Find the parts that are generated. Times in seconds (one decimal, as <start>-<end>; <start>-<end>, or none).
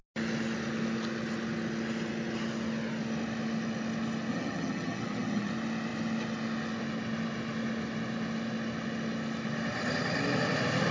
4.3-5.5